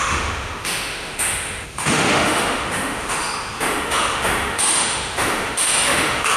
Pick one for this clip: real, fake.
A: fake